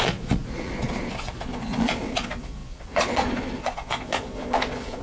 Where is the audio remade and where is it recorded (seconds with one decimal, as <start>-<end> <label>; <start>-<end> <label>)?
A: 0.0-5.0 remade